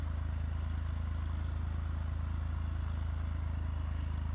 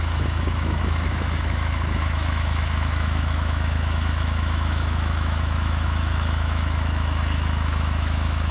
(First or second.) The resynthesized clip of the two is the second